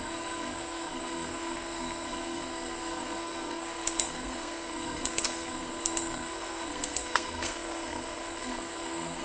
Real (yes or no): no